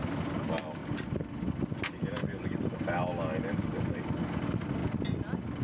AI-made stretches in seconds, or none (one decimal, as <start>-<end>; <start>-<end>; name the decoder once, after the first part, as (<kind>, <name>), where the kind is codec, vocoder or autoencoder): none